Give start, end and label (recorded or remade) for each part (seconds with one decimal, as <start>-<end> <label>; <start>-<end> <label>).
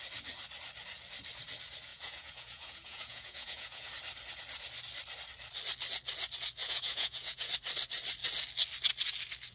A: 0.0-1.9 recorded; 1.9-3.9 remade; 3.9-6.6 recorded; 6.6-7.5 remade; 7.5-9.5 recorded